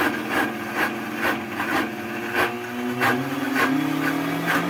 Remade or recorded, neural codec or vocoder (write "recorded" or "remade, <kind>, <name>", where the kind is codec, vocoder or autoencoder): recorded